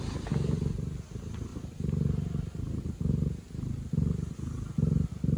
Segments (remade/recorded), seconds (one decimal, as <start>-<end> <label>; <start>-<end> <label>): 0.0-5.4 recorded